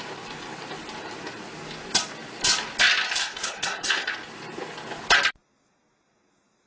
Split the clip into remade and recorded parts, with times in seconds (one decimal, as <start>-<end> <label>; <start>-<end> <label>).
0.0-3.2 recorded; 3.2-4.1 remade; 4.1-6.7 recorded